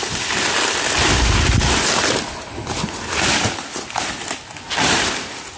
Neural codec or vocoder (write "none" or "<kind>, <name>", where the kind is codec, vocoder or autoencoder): none